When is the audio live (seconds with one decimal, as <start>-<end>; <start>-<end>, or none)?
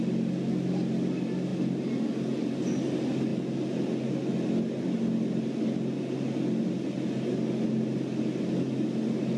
0.0-9.4